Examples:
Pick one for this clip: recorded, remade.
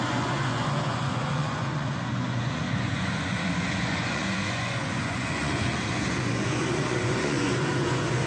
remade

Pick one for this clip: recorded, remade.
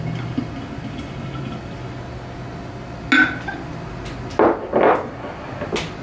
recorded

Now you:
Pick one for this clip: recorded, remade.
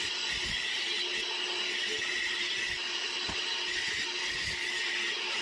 recorded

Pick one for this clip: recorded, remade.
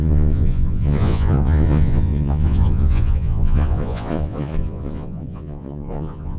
remade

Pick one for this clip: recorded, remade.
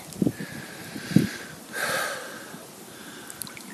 recorded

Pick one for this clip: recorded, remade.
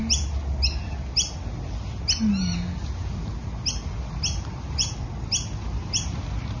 recorded